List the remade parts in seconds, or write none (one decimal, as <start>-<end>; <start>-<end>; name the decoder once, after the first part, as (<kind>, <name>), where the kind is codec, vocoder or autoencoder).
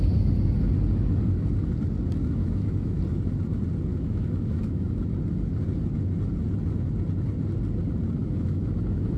2.4-3.0 (autoencoder, DAC-VAE); 3.9-5.0; 8.2-9.2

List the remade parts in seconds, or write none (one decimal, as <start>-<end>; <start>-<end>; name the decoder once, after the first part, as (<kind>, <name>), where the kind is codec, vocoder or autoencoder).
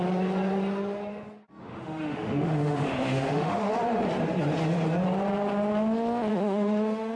1.6-3.7 (autoencoder, DAC-VAE); 6.3-7.2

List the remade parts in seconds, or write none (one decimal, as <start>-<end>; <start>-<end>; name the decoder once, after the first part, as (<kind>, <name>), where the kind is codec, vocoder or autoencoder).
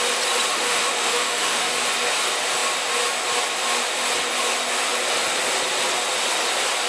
0.5-1.7 (autoencoder, DAC-VAE)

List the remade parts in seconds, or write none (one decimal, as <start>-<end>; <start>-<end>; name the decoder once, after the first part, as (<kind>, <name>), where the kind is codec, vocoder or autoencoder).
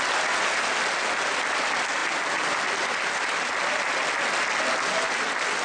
none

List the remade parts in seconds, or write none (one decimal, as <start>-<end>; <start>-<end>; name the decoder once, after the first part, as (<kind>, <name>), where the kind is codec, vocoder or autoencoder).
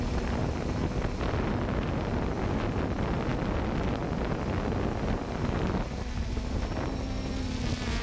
none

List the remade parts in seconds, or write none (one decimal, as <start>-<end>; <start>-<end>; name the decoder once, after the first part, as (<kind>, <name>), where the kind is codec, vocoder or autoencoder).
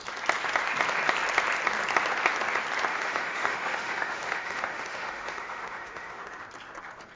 2.9-6.4 (autoencoder, DAC-VAE)